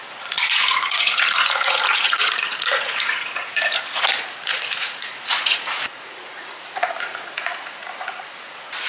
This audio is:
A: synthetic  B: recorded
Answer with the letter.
A